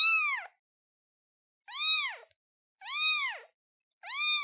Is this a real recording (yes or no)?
yes